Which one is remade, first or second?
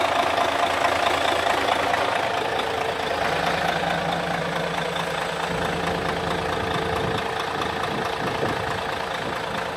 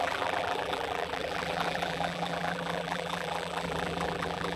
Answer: second